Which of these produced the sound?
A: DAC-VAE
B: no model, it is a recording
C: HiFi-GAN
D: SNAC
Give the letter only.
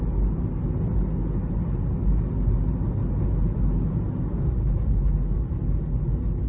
B